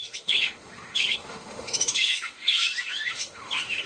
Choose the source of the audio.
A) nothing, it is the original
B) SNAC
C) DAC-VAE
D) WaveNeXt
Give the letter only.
C